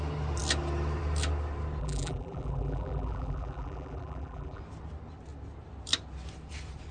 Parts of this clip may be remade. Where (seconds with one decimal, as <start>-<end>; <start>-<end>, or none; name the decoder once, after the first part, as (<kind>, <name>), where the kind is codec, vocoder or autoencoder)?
1.8-4.6 (vocoder, BigVGAN v2)